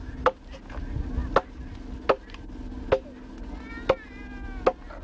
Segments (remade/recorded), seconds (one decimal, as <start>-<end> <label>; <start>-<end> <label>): 0.0-5.0 recorded